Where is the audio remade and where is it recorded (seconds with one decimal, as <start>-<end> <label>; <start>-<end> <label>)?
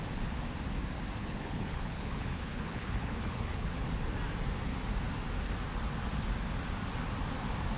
0.0-1.2 recorded; 1.2-3.9 remade; 3.9-7.8 recorded